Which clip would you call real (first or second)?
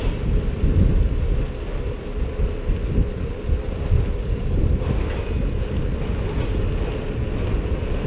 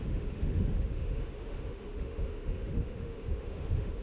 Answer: first